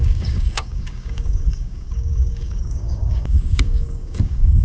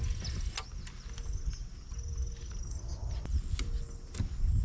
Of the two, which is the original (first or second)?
second